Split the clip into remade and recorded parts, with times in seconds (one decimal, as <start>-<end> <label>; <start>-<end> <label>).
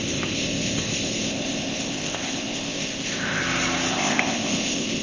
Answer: 0.0-3.4 remade; 3.4-3.9 recorded; 3.9-5.0 remade